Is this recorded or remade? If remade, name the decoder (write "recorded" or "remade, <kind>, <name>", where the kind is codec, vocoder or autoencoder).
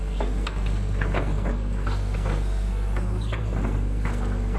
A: remade, codec, SNAC